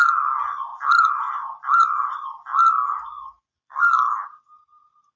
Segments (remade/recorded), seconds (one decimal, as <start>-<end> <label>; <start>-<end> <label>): 0.0-5.2 recorded

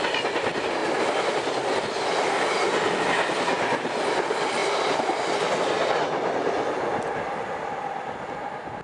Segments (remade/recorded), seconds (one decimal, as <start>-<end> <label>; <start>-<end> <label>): 0.0-8.8 recorded

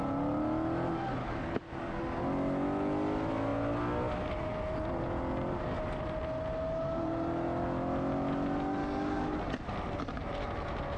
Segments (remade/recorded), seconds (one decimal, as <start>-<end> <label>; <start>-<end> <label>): 0.0-1.2 recorded; 1.2-2.0 remade; 2.0-8.8 recorded; 8.8-9.4 remade; 9.4-11.0 recorded

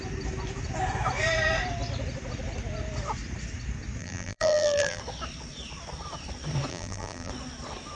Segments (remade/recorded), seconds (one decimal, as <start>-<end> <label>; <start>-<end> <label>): 0.0-4.0 recorded; 4.0-5.0 remade; 5.0-6.7 recorded; 6.7-7.3 remade; 7.3-8.0 recorded

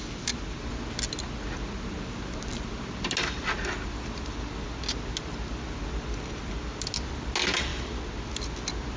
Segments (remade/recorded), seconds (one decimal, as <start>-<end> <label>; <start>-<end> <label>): 0.0-9.0 recorded

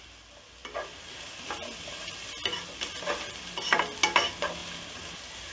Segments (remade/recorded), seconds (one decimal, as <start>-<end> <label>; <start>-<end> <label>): 0.0-5.5 recorded

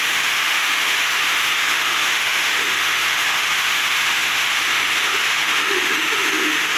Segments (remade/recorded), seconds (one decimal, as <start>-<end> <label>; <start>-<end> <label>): 0.0-6.8 remade

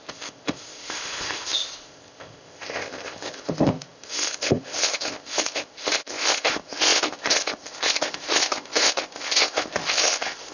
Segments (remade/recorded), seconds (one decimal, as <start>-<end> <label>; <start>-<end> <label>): 0.0-10.5 remade